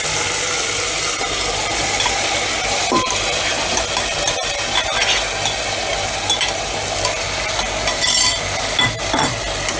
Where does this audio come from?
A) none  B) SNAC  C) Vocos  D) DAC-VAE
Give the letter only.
A